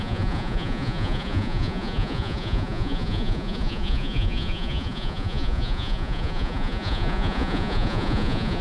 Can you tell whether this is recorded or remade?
remade